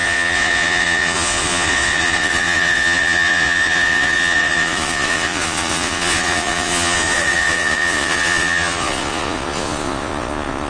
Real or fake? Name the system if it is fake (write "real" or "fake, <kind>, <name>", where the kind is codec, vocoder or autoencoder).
fake, vocoder, Vocos